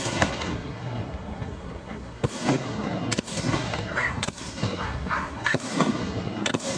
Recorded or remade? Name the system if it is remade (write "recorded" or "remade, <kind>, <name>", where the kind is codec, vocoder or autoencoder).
remade, codec, SNAC